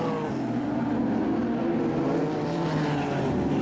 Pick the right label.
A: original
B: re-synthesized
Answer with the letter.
A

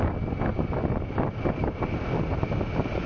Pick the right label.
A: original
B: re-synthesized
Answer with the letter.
A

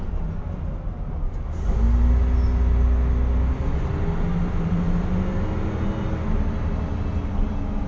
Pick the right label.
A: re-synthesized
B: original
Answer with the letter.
B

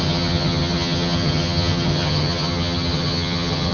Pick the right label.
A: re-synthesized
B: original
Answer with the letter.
A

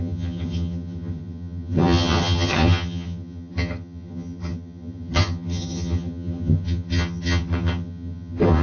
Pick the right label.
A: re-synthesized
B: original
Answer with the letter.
A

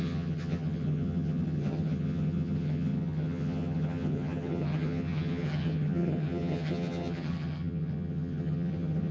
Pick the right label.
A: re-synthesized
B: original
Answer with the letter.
A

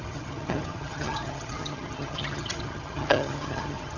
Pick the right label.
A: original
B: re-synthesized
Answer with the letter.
B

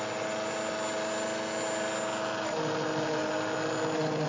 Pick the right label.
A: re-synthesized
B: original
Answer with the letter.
B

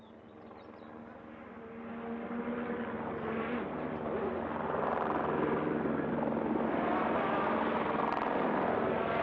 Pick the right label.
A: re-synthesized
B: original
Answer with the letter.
B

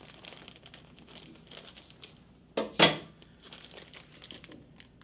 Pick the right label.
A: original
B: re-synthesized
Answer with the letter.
A